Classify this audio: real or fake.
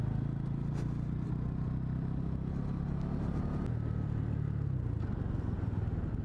real